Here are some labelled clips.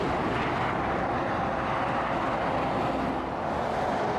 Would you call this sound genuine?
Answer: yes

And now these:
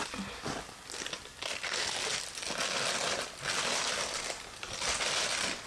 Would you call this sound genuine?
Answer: yes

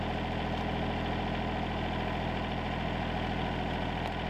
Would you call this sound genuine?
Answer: yes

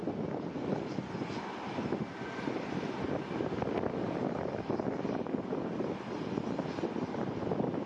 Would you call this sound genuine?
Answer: yes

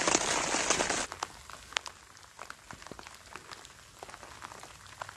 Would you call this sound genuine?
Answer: yes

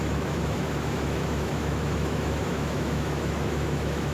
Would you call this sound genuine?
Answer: no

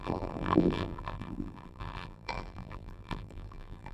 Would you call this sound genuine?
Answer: no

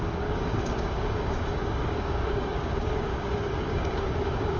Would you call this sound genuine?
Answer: no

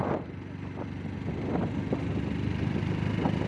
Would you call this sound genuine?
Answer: yes